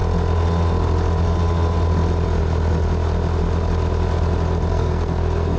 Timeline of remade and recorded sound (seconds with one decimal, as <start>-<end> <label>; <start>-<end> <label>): 0.0-4.7 recorded; 4.7-5.6 remade